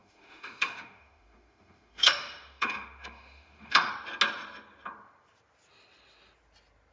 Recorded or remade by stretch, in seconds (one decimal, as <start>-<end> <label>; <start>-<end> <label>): 0.0-3.9 remade; 3.9-6.9 recorded